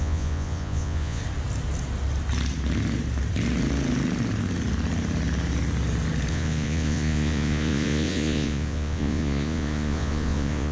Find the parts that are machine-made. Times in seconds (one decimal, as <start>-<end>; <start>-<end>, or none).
0.0-1.2; 6.3-10.7